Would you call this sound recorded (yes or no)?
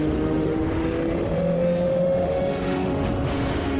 no